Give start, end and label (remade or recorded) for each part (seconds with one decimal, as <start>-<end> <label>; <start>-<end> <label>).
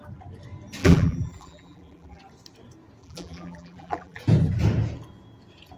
0.0-0.8 recorded; 0.8-2.2 remade; 2.2-3.0 recorded; 3.0-4.2 remade; 4.2-5.8 recorded